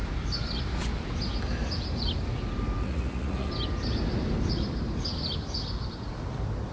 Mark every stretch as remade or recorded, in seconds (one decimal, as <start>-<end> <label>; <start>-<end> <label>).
0.0-2.8 recorded; 2.8-3.5 remade; 3.5-6.7 recorded